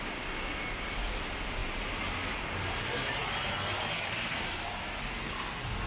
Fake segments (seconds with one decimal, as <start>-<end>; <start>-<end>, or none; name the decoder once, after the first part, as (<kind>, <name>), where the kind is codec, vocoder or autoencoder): none